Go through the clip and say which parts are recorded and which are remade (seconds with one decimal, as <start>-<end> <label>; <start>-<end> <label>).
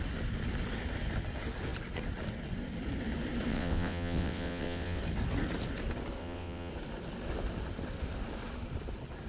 0.0-3.5 recorded; 3.5-5.0 remade; 5.0-6.2 recorded; 6.2-6.7 remade; 6.7-9.3 recorded